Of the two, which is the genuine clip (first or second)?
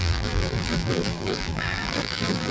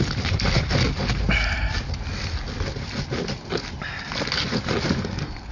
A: second